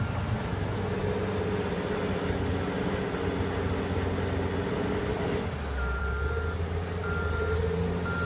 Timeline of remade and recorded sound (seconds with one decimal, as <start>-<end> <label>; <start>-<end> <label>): 0.0-8.3 recorded